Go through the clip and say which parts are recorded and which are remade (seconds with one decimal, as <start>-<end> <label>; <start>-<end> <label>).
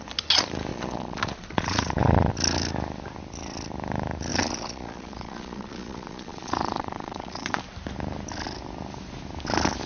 0.0-0.7 recorded; 0.7-2.3 remade; 2.3-4.3 recorded; 4.3-7.6 remade; 7.6-9.9 recorded